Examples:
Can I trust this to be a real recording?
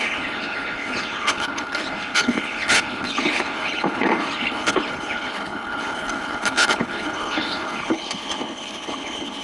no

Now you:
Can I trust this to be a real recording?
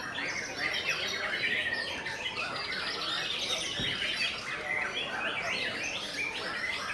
yes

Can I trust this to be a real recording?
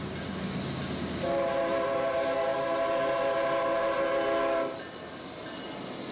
yes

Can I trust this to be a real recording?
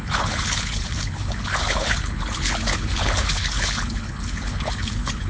no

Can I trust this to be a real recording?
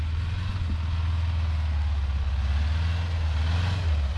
yes